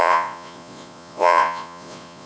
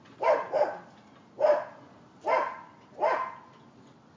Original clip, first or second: second